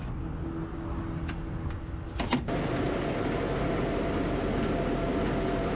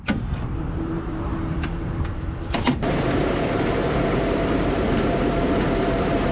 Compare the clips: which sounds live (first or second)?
first